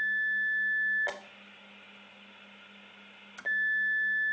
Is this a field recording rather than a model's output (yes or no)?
yes